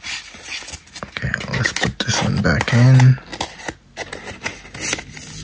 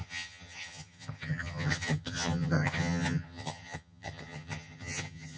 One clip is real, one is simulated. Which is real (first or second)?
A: first